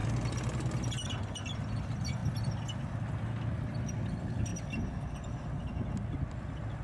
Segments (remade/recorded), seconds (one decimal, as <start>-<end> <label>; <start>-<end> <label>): 0.0-2.2 remade; 2.2-4.0 recorded; 4.0-4.5 remade; 4.5-6.3 recorded; 6.3-6.8 remade